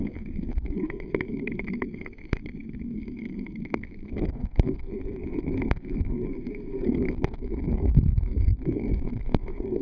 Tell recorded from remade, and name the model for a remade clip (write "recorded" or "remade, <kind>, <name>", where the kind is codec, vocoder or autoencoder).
remade, codec, SNAC